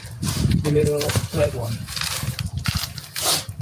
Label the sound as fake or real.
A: fake